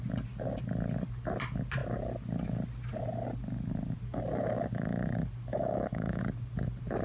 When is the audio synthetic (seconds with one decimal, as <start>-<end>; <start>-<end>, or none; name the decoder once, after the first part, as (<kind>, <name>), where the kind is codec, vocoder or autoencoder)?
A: 5.5-6.2 (autoencoder, DAC-VAE)